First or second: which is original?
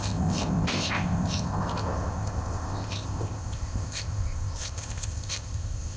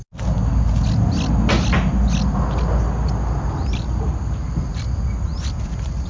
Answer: second